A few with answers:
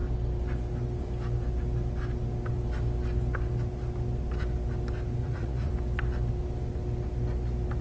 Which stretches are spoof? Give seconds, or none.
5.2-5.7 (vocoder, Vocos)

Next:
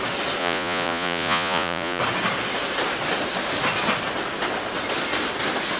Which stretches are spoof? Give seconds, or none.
0.4-2.0 (vocoder, Vocos)

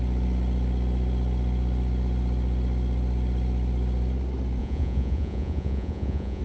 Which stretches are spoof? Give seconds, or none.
4.6-6.4 (vocoder, Vocos)

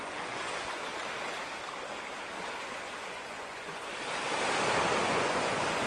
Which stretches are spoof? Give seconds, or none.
0.0-0.9 (vocoder, Vocos); 2.6-3.9; 5.0-5.9

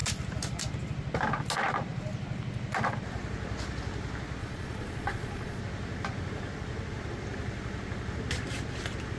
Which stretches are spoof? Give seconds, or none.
4.4-5.6 (vocoder, Vocos)